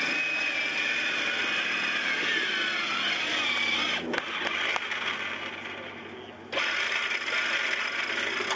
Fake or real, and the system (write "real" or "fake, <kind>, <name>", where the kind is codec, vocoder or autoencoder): real